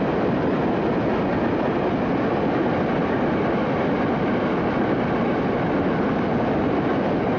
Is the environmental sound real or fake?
real